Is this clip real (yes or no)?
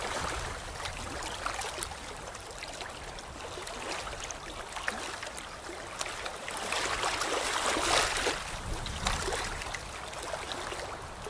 yes